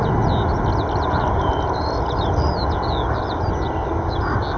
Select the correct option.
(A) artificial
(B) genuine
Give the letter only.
B